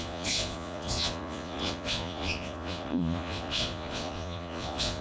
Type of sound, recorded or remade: remade